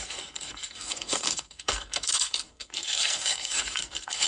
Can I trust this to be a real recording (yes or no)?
no